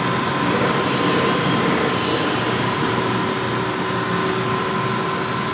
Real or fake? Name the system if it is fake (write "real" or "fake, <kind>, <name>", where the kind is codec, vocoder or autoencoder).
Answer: real